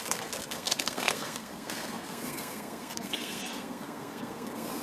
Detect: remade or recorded remade